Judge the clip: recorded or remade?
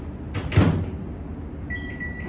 recorded